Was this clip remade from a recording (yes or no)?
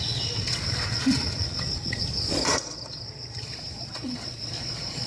yes